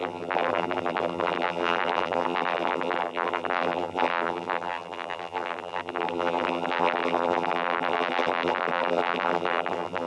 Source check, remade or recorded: remade